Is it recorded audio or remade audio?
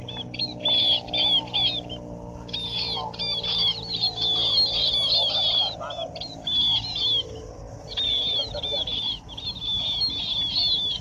recorded